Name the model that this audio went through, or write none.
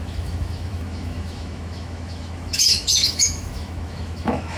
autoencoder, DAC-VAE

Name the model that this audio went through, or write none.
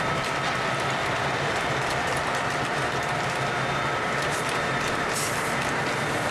none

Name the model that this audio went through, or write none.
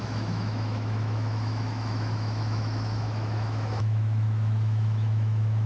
autoencoder, DAC-VAE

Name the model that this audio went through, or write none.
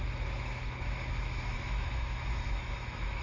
autoencoder, DAC-VAE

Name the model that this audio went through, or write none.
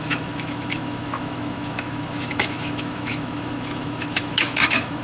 autoencoder, DAC-VAE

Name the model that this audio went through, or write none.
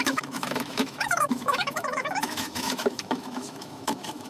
autoencoder, DAC-VAE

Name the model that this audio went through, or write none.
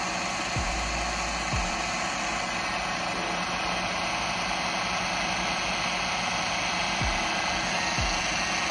none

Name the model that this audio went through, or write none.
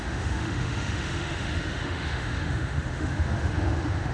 autoencoder, DAC-VAE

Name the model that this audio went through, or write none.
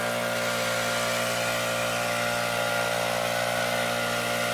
none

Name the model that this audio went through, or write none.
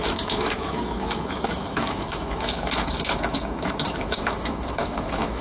autoencoder, DAC-VAE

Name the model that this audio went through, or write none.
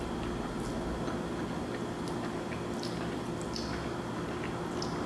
none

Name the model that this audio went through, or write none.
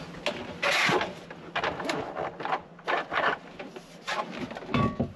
none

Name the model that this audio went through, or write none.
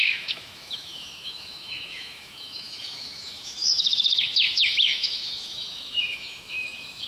autoencoder, DAC-VAE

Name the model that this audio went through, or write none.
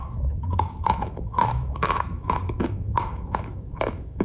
autoencoder, DAC-VAE